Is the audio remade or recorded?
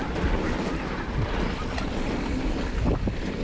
recorded